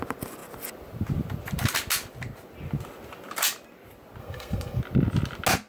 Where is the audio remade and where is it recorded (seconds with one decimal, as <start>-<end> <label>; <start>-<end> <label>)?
0.0-4.2 recorded; 4.2-4.8 remade; 4.8-5.7 recorded